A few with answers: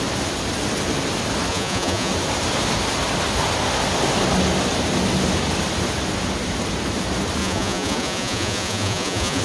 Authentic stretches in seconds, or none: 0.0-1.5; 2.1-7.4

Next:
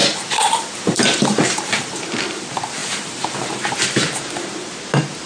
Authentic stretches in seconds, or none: 2.3-5.3